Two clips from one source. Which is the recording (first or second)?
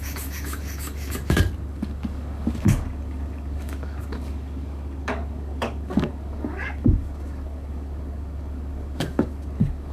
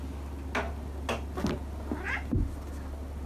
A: second